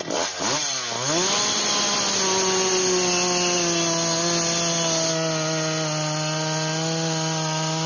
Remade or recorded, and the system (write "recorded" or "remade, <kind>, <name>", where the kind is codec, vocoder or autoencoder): recorded